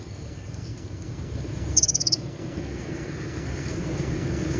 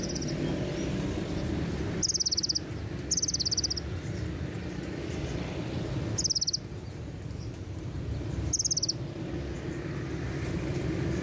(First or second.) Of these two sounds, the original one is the second